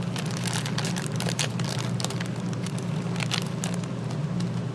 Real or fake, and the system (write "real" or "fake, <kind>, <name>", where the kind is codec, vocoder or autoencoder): real